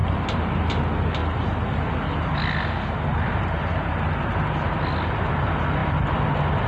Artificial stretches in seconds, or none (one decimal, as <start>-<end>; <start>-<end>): 0.0-0.7; 3.1-3.9